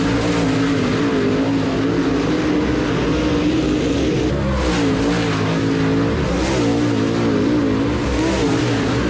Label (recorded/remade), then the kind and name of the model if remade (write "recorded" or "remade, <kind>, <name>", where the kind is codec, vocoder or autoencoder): recorded